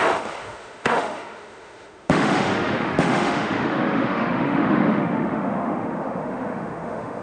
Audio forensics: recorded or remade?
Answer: remade